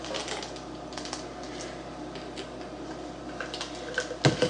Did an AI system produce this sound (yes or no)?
no